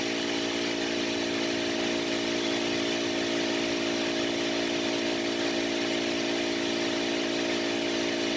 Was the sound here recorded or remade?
recorded